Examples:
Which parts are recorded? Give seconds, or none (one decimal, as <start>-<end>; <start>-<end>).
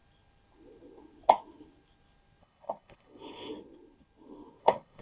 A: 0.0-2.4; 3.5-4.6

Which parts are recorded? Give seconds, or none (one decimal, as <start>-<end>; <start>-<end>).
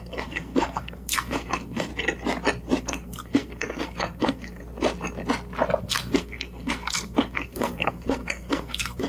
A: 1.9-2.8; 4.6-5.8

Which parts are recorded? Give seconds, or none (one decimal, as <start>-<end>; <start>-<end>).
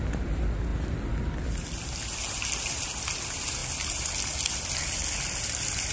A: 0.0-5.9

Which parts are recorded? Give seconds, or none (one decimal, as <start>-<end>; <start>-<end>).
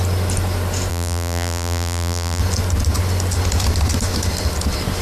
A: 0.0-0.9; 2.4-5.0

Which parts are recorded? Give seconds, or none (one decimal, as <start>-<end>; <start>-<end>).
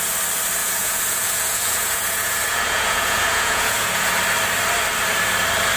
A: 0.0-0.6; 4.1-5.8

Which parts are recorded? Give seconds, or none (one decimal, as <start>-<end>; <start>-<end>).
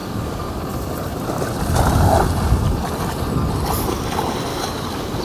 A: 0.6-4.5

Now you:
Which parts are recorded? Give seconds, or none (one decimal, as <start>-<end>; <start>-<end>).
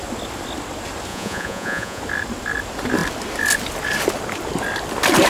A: 0.0-1.1; 2.0-5.3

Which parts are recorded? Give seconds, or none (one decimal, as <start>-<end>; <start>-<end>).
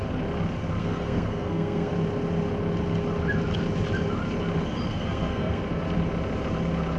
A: 0.0-0.8; 1.9-4.9; 5.6-7.0